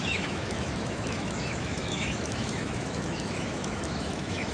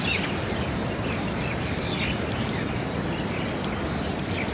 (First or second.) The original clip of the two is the second